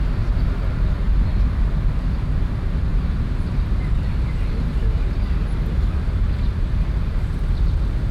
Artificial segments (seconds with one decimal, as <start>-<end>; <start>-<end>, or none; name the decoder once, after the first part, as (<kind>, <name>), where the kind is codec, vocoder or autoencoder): 2.9-6.5 (vocoder, BigVGAN v2)